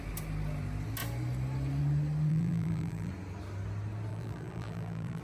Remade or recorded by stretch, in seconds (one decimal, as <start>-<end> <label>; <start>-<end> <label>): 0.0-2.3 recorded; 2.3-3.1 remade; 3.1-4.1 recorded; 4.1-5.2 remade